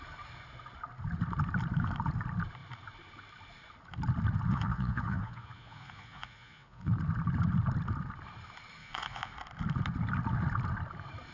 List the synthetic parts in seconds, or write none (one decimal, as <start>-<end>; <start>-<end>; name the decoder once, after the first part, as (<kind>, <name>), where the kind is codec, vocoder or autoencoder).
4.5-6.9 (vocoder, Vocos); 8.8-9.3